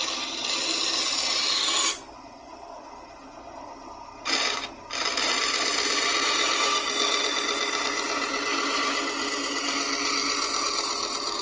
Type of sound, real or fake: real